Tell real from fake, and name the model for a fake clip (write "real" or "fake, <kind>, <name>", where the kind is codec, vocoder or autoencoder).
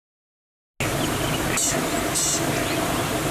real